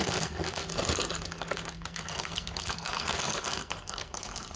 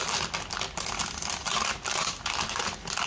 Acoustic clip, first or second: second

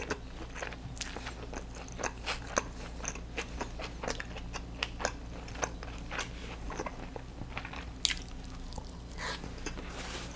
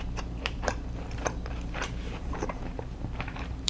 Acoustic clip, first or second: first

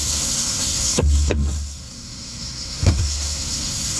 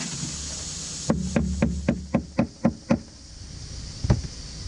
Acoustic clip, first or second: second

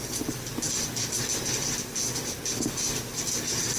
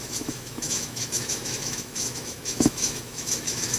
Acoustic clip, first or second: first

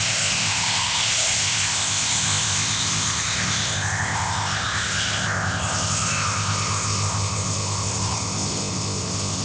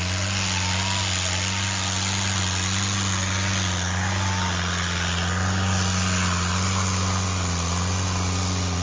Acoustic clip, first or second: second